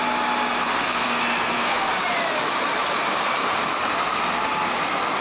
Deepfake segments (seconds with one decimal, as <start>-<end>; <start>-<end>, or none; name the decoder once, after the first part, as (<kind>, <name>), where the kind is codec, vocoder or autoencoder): 0.9-1.9 (codec, SNAC)

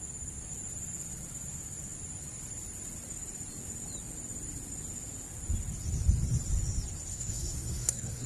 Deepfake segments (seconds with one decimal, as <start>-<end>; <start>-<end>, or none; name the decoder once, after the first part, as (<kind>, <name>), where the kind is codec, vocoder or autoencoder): 7.1-8.3 (codec, SNAC)